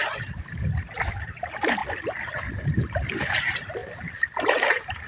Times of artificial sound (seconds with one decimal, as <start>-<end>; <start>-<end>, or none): 0.0-1.8; 3.2-5.1